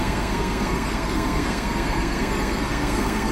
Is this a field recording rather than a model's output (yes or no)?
no